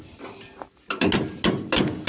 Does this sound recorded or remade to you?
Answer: recorded